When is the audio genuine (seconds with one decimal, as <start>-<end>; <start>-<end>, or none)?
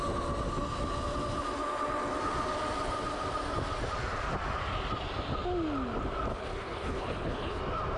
0.0-6.3; 7.6-8.0